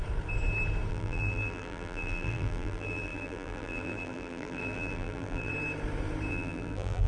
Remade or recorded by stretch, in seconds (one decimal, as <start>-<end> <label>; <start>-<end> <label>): 0.0-0.9 recorded; 0.9-5.5 remade; 5.5-6.3 recorded; 6.3-7.1 remade